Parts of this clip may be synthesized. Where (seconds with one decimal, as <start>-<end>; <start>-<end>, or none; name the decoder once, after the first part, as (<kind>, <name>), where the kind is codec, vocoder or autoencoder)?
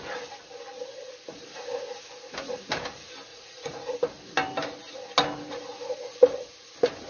3.3-3.9 (vocoder, Vocos)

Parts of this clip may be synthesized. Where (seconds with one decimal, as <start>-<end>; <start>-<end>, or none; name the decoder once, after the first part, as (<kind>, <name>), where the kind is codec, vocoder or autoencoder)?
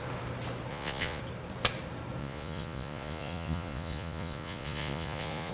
0.7-1.2 (vocoder, Vocos); 2.2-5.5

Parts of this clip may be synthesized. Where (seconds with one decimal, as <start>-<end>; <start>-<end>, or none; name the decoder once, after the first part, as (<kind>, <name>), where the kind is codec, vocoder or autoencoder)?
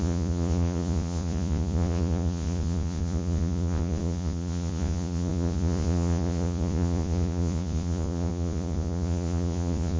0.0-10.0 (vocoder, Vocos)